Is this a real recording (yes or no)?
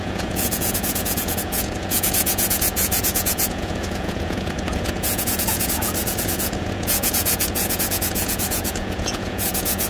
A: no